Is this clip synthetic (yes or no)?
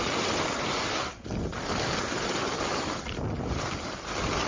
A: no